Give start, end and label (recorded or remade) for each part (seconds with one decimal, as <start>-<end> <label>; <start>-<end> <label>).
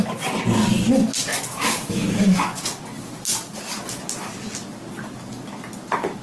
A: 0.0-1.3 recorded; 1.3-2.6 remade; 2.6-6.2 recorded